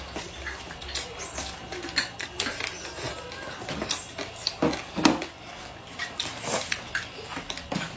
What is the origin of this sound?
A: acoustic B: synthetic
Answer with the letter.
A